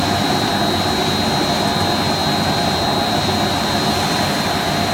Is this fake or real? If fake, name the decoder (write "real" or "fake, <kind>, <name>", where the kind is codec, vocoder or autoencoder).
real